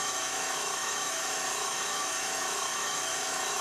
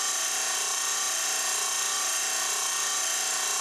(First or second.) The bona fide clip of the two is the second